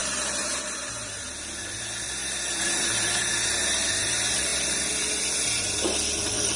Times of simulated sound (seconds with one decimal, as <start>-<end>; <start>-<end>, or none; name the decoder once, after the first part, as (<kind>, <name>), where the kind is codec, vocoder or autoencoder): 0.0-1.3 (vocoder, BigVGAN v2); 2.2-3.3